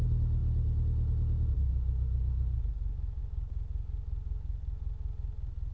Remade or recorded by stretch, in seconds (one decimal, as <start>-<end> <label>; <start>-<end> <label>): 0.0-5.7 recorded

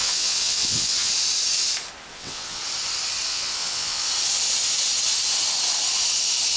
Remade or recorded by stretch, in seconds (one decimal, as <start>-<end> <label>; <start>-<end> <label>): 0.0-1.1 remade; 1.1-2.1 recorded; 2.1-2.6 remade; 2.6-3.3 recorded; 3.3-4.1 remade; 4.1-6.6 recorded

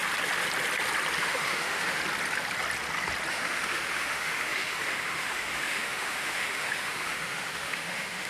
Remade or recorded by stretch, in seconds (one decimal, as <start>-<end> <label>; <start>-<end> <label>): 0.0-1.2 recorded; 1.2-2.0 remade; 2.0-3.3 recorded; 3.3-8.3 remade